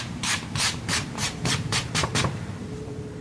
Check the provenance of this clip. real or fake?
fake